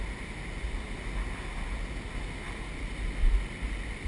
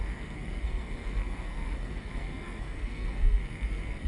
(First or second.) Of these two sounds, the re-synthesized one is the second